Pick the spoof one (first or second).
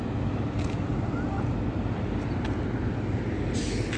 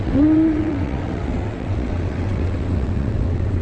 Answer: second